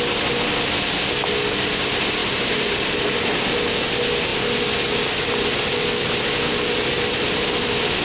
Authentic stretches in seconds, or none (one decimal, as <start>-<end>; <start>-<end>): 0.0-2.2; 3.3-8.0